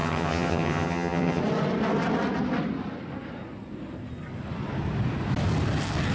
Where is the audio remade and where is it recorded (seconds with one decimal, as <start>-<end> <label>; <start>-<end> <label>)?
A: 0.0-1.4 remade; 1.4-6.1 recorded